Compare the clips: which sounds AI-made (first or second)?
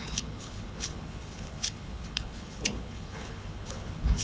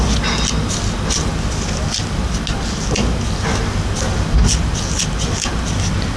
first